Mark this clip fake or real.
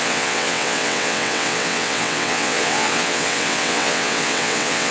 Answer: fake